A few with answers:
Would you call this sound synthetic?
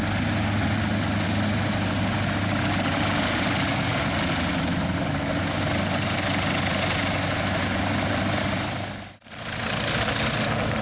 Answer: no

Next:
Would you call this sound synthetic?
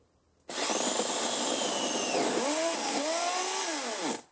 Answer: no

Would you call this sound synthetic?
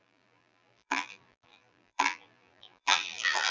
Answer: yes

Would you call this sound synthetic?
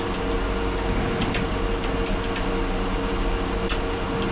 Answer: no